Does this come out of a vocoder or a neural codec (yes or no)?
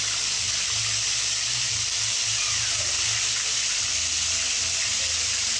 no